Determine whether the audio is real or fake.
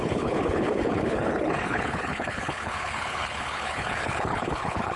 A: fake